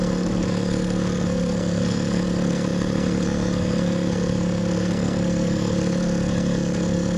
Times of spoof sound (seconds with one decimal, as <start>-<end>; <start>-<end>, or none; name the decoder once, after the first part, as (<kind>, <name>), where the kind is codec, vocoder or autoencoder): 0.0-7.2 (codec, SNAC)